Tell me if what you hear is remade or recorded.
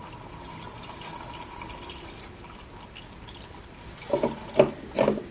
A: recorded